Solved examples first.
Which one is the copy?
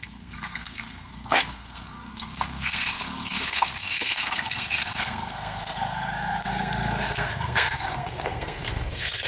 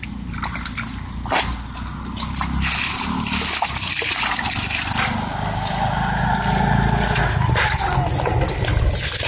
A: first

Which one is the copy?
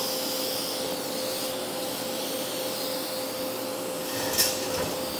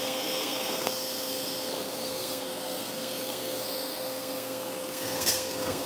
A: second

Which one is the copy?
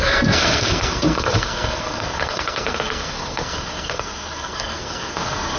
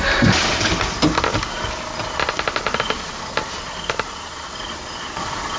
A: first